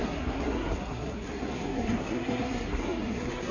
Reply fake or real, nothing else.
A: fake